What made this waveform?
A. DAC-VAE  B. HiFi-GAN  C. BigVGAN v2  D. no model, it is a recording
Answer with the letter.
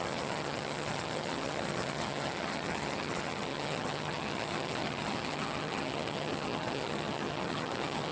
B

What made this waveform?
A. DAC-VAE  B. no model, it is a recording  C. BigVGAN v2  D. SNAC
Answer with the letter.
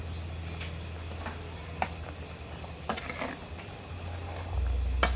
B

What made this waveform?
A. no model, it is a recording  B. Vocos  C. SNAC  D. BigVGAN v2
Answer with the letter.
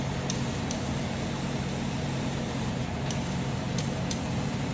D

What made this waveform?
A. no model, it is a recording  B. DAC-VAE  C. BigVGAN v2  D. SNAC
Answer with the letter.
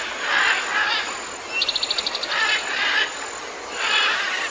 A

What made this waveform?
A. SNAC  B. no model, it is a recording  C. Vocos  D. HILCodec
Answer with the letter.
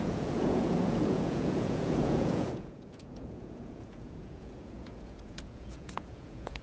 C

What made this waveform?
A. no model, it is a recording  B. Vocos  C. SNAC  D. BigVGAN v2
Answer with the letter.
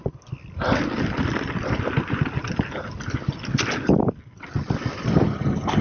A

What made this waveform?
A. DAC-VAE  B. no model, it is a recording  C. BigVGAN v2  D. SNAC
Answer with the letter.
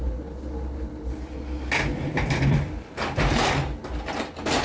B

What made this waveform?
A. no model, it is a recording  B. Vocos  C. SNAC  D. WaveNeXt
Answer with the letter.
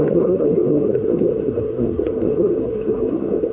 C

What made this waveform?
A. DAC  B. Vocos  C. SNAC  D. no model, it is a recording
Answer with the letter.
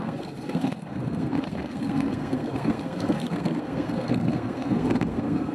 C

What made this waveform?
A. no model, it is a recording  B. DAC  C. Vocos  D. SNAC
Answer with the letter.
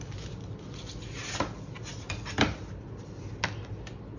A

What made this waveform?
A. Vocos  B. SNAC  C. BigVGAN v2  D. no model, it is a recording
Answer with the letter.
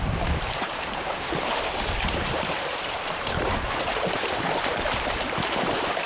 C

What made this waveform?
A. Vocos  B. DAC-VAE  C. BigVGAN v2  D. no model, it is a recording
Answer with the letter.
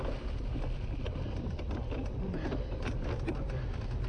D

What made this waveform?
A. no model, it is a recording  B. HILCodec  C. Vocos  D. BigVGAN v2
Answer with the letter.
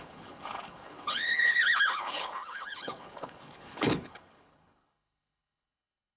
B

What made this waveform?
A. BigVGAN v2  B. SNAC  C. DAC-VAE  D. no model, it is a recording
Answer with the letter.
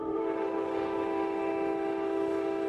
C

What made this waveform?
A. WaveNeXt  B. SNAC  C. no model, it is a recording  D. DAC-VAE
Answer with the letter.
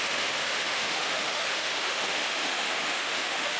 D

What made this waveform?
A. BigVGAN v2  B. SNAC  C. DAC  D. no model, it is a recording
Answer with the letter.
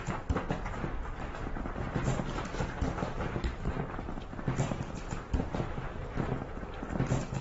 A